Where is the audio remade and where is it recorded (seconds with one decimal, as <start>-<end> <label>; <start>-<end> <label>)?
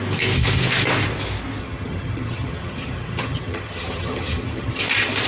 0.0-1.6 recorded; 1.6-4.8 remade; 4.8-5.3 recorded